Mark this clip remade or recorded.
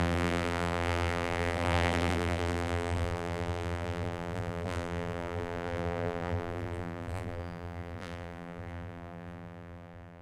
remade